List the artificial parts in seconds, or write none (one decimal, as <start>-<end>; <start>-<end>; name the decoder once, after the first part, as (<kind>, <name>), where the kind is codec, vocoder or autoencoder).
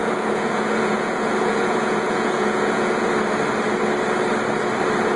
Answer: 0.0-3.1 (vocoder, Vocos)